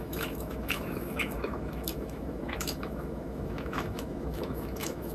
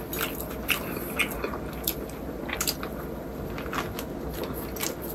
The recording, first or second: second